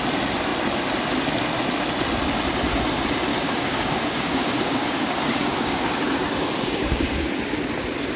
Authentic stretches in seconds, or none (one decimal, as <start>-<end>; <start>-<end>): 0.0-3.3; 7.3-8.2